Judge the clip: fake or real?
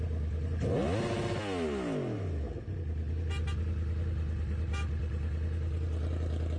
real